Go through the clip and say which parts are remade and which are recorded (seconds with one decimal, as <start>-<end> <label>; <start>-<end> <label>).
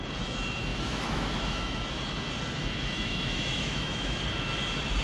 0.0-0.7 recorded; 0.7-1.8 remade; 1.8-2.9 recorded; 2.9-4.2 remade; 4.2-5.0 recorded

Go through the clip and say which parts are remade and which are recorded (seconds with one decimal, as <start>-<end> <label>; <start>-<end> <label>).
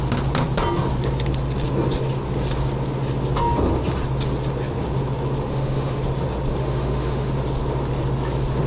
0.0-5.5 recorded; 5.5-6.0 remade; 6.0-6.6 recorded; 6.6-7.3 remade; 7.3-8.7 recorded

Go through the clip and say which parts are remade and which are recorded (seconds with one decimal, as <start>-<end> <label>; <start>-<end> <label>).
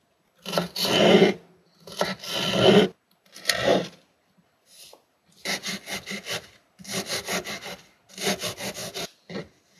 0.0-9.8 recorded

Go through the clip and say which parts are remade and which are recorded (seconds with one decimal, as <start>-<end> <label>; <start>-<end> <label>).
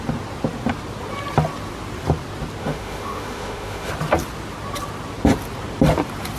0.0-2.6 recorded; 2.6-3.9 remade; 3.9-6.4 recorded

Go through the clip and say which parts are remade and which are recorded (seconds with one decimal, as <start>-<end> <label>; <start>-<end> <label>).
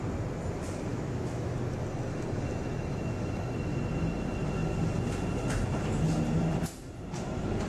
0.0-0.9 recorded; 0.9-1.5 remade; 1.5-7.7 recorded